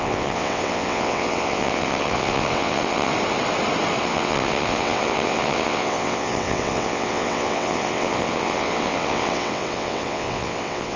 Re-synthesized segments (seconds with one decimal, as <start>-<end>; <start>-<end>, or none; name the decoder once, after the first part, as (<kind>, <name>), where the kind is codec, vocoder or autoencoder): 0.0-3.1 (vocoder, WaveNeXt); 4.0-11.0